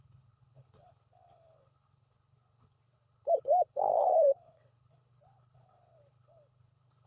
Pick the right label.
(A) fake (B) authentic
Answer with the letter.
A